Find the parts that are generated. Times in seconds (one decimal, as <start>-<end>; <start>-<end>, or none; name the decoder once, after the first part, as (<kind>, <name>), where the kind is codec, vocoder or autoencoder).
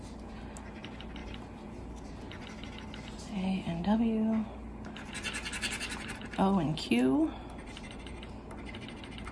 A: none